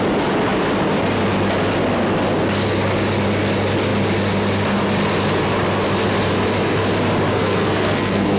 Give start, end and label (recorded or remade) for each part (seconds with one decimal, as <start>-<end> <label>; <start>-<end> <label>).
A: 0.0-7.3 recorded; 7.3-8.4 remade